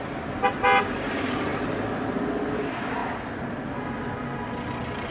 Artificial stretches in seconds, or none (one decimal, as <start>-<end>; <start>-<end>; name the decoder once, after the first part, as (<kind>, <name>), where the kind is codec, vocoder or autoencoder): none